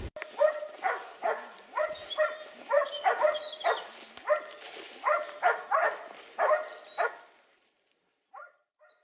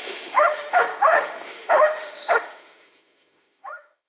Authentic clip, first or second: first